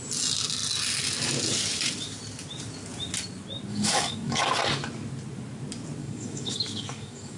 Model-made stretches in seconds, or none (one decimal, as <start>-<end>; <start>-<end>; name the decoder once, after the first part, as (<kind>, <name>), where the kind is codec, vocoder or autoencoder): 3.7-4.4 (codec, DAC); 6.0-7.4